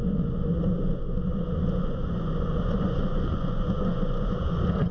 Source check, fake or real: fake